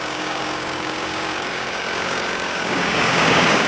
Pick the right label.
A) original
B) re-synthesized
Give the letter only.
B